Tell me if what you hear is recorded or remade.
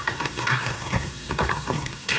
remade